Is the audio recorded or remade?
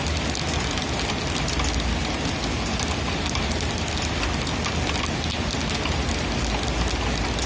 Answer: recorded